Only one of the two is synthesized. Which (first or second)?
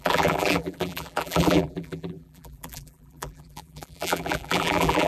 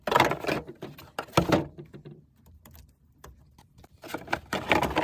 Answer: first